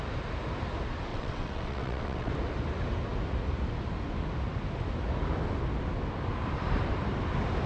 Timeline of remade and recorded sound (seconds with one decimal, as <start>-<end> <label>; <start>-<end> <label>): 0.0-1.1 recorded; 1.1-2.3 remade; 2.3-7.7 recorded